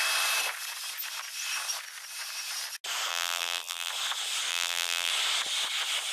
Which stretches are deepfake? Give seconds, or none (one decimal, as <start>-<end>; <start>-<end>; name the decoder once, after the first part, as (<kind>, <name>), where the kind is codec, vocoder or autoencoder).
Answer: 3.1-3.9 (vocoder, BigVGAN v2); 4.5-5.1